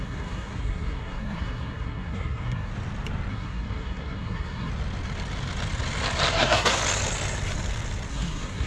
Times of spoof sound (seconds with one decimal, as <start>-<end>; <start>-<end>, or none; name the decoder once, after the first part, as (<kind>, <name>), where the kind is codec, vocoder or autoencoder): 0.0-2.7 (codec, SNAC); 3.3-4.7; 6.3-6.8; 8.1-8.7